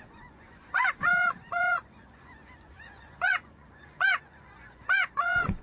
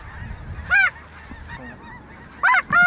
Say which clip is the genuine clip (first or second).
second